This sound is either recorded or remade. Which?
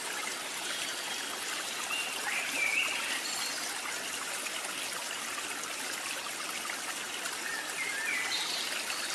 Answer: recorded